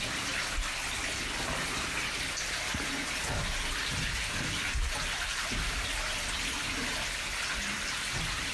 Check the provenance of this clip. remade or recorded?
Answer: recorded